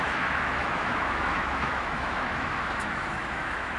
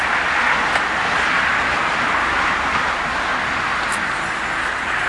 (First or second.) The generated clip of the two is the first